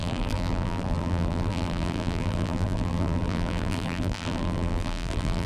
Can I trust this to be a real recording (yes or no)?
no